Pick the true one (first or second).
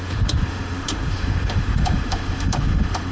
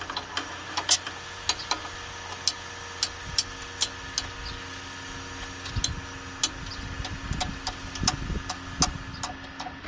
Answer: second